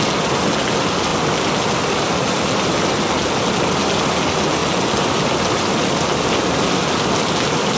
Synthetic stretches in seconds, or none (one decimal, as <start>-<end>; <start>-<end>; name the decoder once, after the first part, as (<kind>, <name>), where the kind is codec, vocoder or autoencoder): none